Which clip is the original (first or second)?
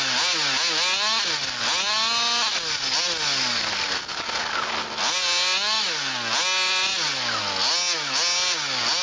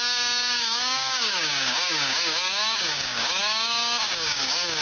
first